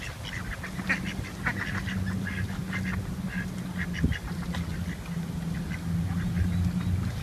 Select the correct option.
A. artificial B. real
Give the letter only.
B